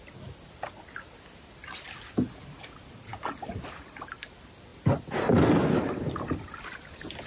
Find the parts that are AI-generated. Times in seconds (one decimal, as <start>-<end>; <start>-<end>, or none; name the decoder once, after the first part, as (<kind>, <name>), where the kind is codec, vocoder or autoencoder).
none